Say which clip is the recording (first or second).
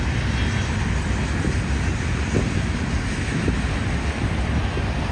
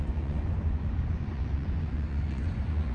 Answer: first